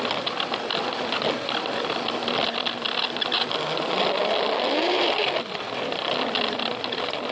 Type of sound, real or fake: real